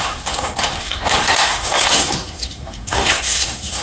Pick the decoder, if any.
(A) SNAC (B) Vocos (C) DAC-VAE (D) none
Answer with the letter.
A